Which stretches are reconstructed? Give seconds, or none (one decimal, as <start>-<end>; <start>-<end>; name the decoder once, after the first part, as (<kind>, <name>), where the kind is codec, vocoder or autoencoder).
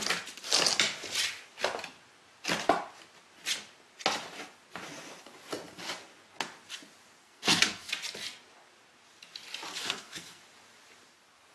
7.2-7.9 (codec, SNAC); 9.7-10.4